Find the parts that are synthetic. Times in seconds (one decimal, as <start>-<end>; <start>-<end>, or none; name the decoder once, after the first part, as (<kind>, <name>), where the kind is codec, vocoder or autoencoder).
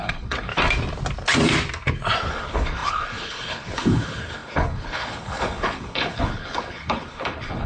0.0-0.5 (codec, HILCodec); 2.3-7.7